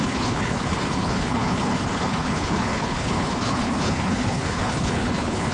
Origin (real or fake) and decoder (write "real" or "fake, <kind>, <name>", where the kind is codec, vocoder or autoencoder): fake, codec, HILCodec